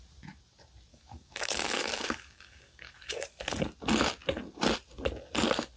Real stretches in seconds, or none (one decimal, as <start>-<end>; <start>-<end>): 0.0-0.9; 3.4-5.8